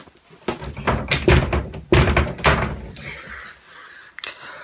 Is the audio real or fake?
real